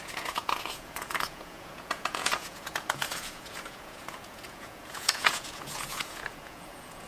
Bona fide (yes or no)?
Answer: no